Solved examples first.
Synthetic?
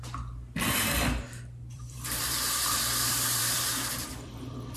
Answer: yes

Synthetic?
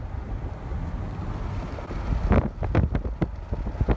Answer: no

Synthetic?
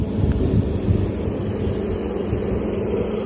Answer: no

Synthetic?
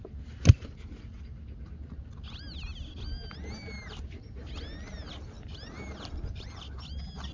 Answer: no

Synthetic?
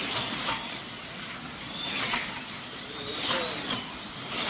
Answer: no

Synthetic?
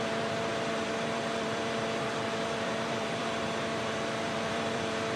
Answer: yes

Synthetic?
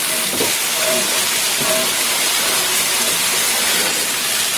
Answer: yes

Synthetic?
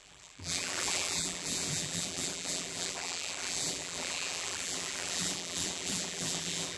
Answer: yes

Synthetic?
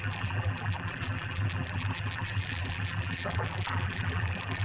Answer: yes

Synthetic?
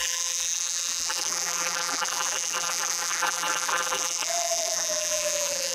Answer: yes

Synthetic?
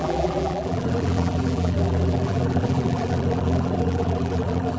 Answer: yes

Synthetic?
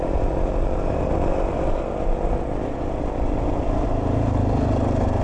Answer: no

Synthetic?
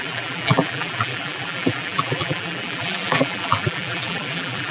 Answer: yes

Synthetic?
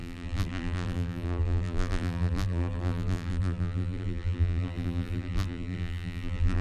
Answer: yes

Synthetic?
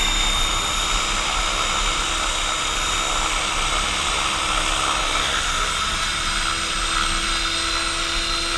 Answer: no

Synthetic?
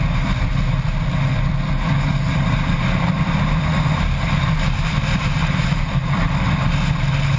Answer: yes